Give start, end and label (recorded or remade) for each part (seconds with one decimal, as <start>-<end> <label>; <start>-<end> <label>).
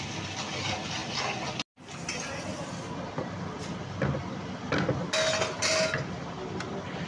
0.0-7.1 recorded